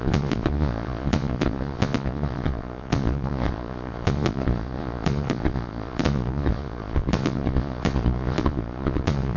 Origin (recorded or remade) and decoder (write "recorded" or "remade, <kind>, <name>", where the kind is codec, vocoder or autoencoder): remade, vocoder, Vocos